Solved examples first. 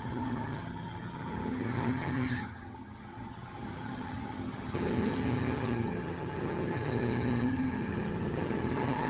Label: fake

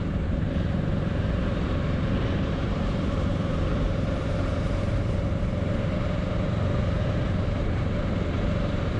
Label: fake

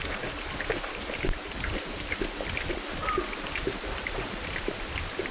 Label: real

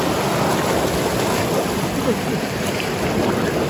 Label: real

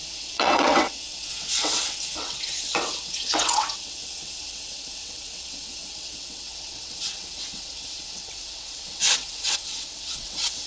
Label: fake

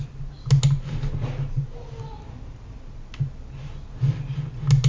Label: real